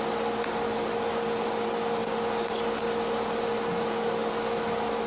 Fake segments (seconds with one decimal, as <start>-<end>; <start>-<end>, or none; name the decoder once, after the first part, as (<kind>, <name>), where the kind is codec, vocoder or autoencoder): none